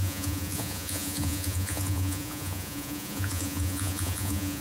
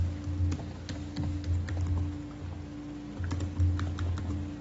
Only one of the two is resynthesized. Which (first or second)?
first